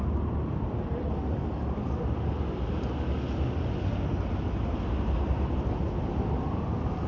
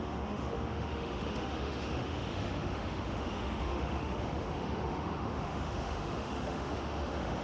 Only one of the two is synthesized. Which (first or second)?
second